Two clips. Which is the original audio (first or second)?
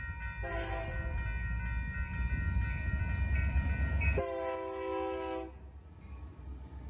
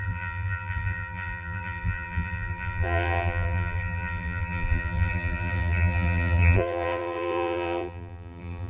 first